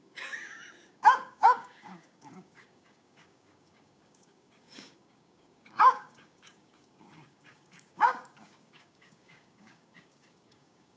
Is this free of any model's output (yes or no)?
no